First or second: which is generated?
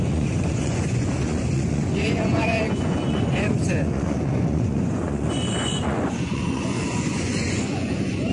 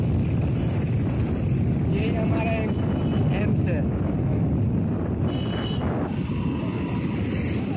first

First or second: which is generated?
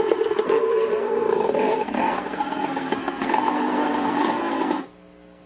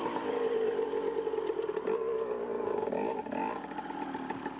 first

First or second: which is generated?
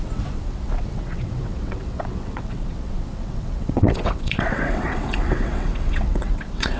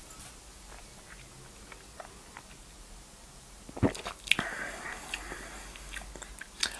first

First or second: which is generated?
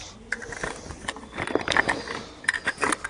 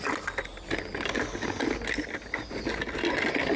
first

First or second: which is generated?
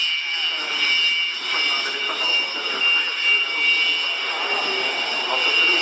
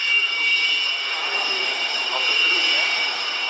second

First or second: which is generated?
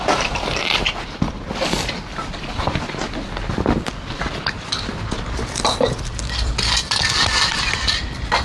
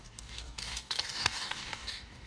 second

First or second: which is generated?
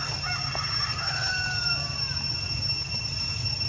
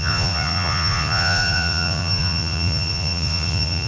second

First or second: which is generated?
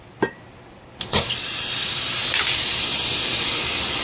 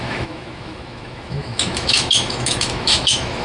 second